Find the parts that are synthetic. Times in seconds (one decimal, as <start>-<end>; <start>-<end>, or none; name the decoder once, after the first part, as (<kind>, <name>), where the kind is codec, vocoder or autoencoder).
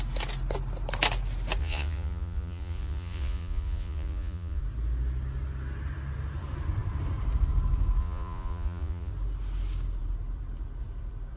1.6-4.6 (vocoder, Vocos); 8.0-9.1